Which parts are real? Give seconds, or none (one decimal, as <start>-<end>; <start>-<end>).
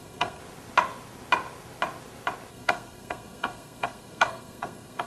0.4-2.5